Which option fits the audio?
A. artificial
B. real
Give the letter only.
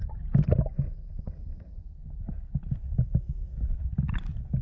B